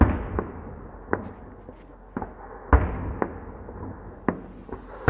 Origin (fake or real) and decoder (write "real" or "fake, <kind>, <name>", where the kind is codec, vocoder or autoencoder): real